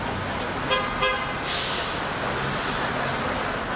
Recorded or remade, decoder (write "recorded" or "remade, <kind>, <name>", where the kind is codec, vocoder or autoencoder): recorded